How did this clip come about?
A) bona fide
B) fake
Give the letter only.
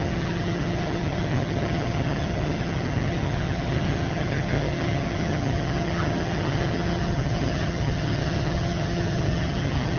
B